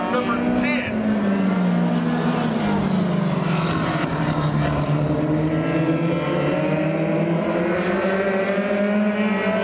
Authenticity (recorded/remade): recorded